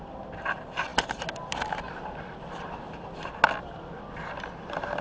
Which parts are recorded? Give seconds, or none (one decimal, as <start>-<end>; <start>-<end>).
0.0-5.0